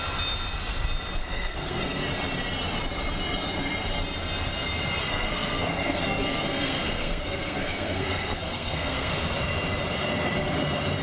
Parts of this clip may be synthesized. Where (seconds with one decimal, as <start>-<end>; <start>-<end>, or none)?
1.2-2.0; 5.0-9.1